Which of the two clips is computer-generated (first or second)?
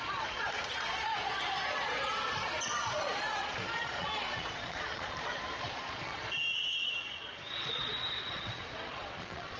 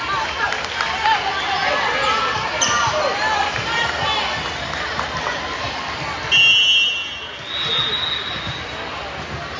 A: first